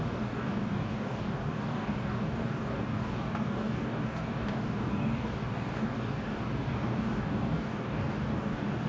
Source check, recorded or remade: remade